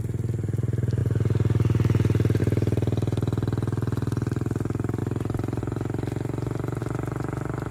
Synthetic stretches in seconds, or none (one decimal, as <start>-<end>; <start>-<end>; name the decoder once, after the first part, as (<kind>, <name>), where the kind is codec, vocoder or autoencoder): 5.0-5.6 (vocoder, BigVGAN v2)